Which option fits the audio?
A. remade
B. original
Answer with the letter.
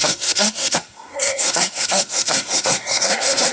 A